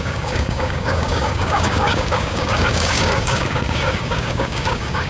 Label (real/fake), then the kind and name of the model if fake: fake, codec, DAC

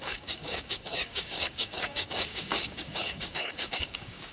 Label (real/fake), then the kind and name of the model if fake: fake, codec, DAC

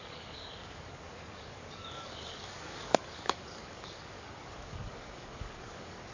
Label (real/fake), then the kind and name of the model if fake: fake, codec, DAC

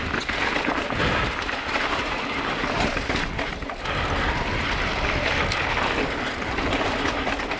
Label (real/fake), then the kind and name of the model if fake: real